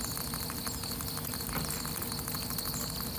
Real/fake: real